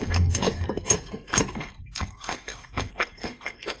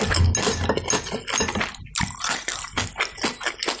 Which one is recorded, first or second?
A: second